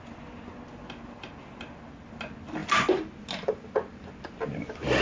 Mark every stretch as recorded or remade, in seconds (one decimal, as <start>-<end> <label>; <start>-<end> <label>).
0.0-5.0 recorded